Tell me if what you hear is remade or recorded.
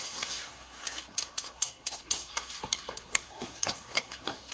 remade